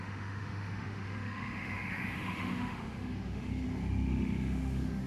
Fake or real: fake